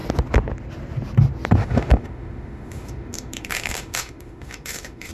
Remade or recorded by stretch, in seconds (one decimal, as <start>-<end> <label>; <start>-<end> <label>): 0.0-1.6 recorded; 1.6-5.1 remade